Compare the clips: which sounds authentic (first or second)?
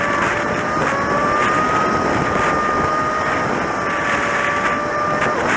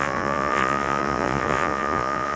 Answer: first